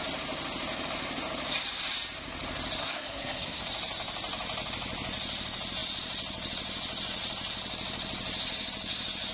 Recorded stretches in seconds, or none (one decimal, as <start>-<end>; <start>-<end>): 0.0-2.8; 3.6-9.3